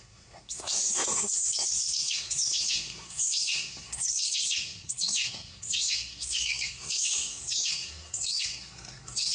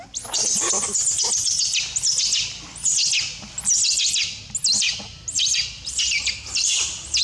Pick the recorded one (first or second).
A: second